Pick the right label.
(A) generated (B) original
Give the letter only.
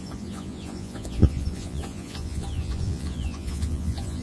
A